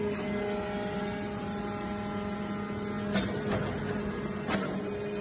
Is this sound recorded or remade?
recorded